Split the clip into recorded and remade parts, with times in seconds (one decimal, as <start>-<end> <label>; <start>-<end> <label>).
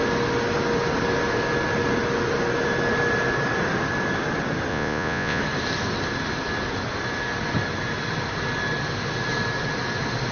0.0-4.7 recorded; 4.7-5.4 remade; 5.4-10.3 recorded